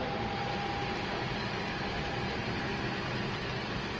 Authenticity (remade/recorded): recorded